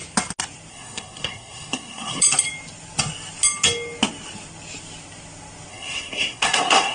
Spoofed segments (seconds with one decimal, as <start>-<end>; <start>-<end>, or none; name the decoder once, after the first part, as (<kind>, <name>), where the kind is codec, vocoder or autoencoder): 0.7-2.2 (codec, SNAC); 5.7-6.9